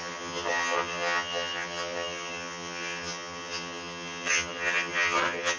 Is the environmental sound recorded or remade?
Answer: remade